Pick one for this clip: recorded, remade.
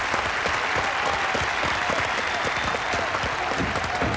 recorded